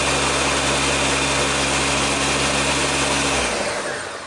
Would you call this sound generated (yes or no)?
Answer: no